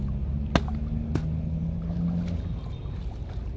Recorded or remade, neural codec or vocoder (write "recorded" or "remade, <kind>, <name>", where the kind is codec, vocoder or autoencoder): recorded